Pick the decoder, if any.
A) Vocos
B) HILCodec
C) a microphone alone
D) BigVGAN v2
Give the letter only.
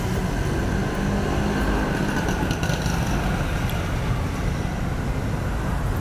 C